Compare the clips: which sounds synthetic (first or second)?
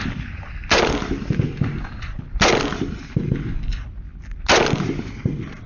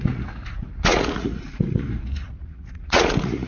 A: second